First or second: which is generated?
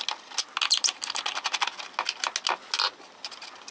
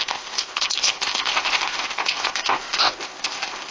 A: second